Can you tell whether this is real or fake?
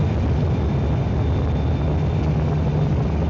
real